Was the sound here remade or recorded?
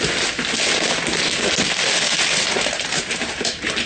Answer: recorded